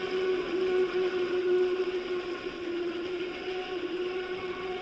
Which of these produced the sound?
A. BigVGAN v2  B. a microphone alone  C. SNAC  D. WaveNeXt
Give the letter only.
D